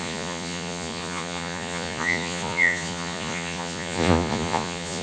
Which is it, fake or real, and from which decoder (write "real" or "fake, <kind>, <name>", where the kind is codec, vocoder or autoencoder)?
fake, vocoder, Vocos